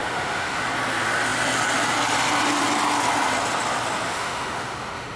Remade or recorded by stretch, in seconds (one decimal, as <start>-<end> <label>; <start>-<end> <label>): 0.0-0.6 remade; 0.6-4.1 recorded; 4.1-5.2 remade